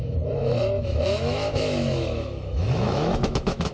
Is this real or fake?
fake